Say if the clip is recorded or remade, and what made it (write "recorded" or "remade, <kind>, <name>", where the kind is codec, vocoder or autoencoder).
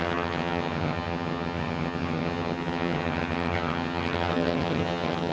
remade, vocoder, HiFi-GAN